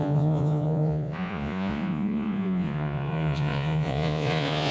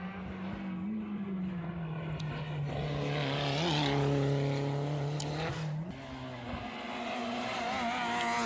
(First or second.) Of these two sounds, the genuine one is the second